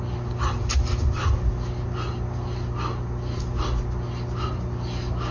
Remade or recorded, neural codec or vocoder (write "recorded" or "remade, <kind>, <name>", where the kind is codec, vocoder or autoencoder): recorded